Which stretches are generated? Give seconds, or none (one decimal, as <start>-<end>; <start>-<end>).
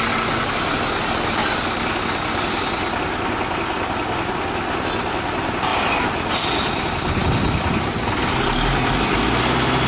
none